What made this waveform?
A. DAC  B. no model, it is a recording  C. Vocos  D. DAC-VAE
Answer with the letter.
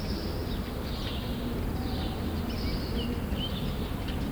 B